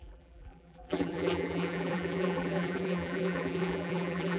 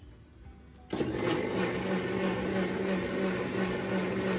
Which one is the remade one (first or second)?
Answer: first